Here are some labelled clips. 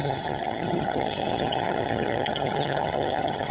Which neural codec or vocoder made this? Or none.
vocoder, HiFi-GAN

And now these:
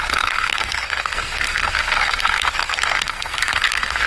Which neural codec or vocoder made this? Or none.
codec, SNAC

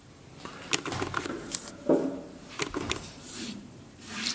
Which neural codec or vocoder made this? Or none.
none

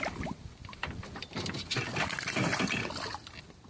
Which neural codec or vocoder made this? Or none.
vocoder, BigVGAN v2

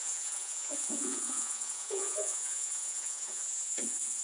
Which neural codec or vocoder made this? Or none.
vocoder, Vocos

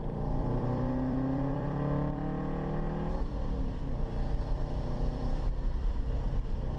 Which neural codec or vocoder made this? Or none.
vocoder, BigVGAN v2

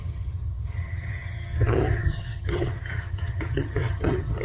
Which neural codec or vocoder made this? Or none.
vocoder, HiFi-GAN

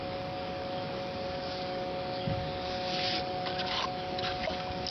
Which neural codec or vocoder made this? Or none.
codec, DAC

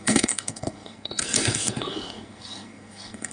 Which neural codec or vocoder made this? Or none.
codec, SNAC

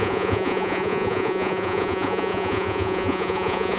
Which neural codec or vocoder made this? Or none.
vocoder, Vocos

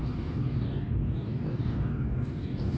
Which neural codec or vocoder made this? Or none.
codec, DAC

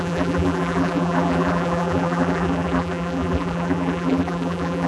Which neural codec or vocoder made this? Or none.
vocoder, BigVGAN v2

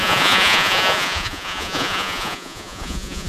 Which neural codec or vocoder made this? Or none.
vocoder, Vocos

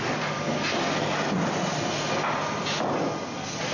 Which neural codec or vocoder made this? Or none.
none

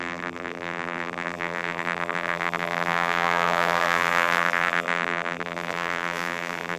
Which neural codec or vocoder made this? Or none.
vocoder, BigVGAN v2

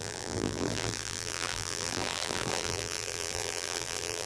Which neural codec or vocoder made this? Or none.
vocoder, BigVGAN v2